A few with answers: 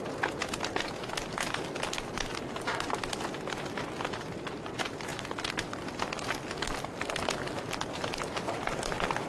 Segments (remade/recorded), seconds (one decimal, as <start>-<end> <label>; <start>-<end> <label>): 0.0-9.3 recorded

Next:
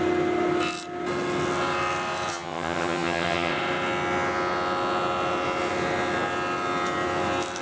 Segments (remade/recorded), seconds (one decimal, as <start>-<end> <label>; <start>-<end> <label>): 0.0-2.3 recorded; 2.3-3.5 remade; 3.5-7.6 recorded

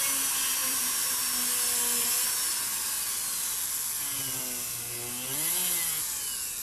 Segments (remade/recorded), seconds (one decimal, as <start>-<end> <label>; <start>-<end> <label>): 0.0-0.6 recorded; 0.6-1.2 remade; 1.2-6.6 recorded

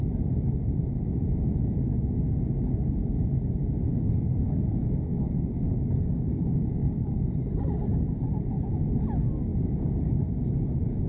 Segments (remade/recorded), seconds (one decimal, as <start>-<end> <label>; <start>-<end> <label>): 0.0-3.9 recorded; 3.9-8.3 remade; 8.3-11.1 recorded